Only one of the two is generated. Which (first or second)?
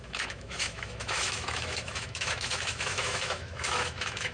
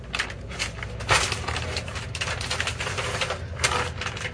first